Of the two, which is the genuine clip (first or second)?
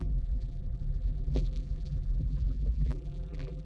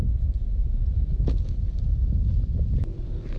second